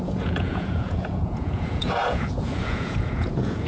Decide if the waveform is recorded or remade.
remade